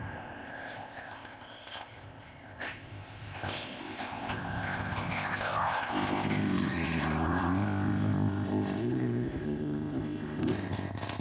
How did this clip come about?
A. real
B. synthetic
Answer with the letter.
B